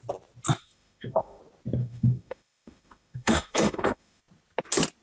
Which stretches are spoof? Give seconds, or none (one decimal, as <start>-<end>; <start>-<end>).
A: 0.6-1.4; 1.8-4.2